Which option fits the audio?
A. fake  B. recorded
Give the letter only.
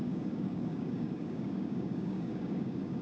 A